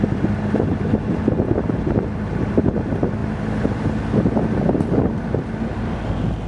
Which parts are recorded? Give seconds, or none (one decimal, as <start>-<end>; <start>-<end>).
0.0-6.5